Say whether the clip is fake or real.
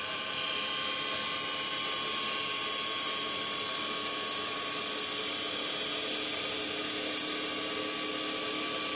real